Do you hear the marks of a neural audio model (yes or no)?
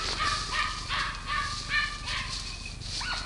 no